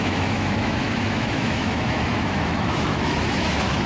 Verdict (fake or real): fake